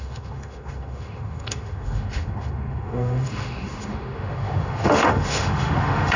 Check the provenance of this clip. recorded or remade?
remade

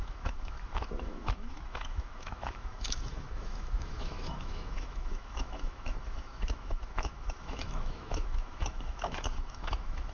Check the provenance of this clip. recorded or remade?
remade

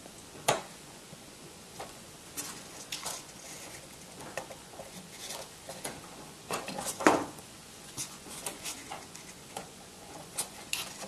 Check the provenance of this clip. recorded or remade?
remade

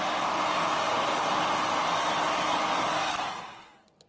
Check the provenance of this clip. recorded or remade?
recorded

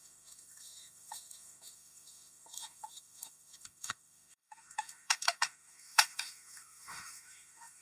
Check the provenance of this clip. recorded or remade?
remade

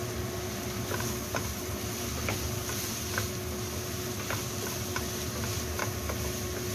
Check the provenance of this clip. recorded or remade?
recorded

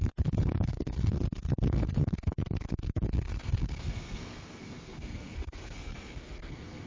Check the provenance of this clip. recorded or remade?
remade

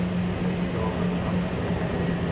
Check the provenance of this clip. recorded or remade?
recorded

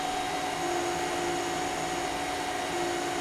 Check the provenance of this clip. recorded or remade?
recorded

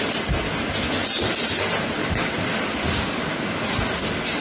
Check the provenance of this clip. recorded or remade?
recorded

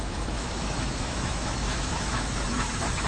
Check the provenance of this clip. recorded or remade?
remade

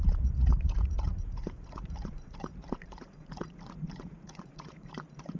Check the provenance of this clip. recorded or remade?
remade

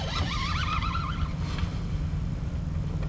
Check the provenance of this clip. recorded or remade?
recorded